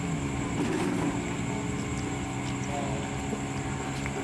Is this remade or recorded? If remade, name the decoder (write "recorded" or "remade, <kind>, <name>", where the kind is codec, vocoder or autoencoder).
recorded